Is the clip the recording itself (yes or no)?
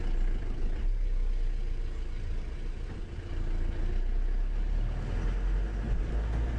yes